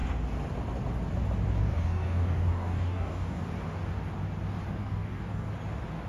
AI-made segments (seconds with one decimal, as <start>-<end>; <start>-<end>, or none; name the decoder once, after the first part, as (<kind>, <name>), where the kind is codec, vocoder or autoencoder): 1.6-3.4 (codec, DAC); 4.8-5.5